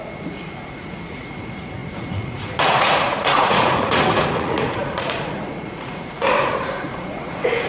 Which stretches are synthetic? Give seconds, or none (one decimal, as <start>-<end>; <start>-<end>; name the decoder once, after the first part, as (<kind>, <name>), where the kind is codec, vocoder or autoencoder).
0.0-7.7 (vocoder, Vocos)